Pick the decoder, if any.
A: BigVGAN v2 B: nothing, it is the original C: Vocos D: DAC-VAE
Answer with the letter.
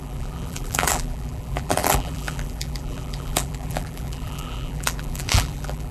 A